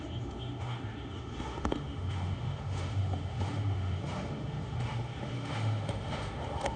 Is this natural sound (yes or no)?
no